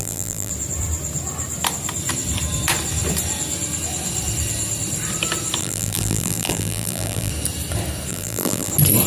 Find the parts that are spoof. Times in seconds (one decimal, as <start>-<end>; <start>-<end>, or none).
0.0-0.5; 5.6-7.3; 8.1-8.7